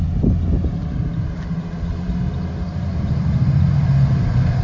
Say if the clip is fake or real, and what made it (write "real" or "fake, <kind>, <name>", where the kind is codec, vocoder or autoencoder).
real